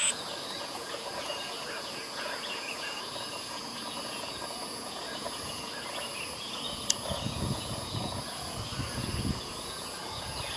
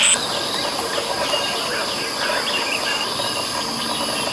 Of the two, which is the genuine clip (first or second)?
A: second